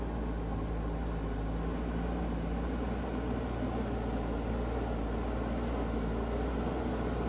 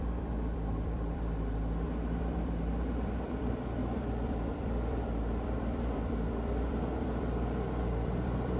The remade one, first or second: second